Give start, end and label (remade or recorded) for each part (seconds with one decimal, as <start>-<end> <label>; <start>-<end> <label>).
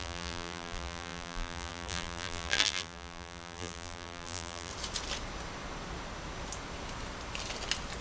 0.0-4.7 remade; 4.7-8.0 recorded